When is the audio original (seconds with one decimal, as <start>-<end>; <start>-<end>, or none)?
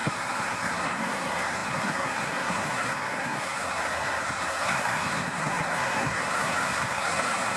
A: none